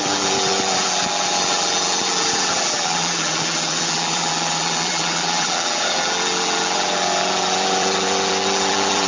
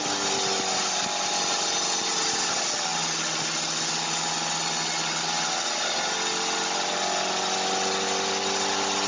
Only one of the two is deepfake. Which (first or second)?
first